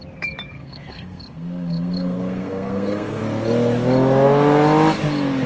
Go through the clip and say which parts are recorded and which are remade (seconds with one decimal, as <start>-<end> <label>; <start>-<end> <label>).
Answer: 0.0-0.5 recorded; 0.5-3.2 remade; 3.2-5.5 recorded